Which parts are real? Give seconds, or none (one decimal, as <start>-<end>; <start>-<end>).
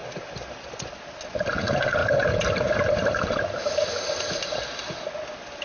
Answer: 1.0-2.0; 3.4-5.6